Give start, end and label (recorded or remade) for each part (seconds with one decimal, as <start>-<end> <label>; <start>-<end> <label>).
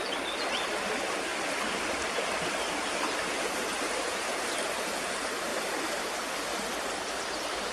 0.0-1.3 recorded; 1.3-3.3 remade; 3.3-5.5 recorded; 5.5-6.0 remade; 6.0-7.7 recorded